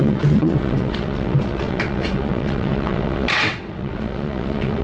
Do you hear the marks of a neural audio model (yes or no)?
yes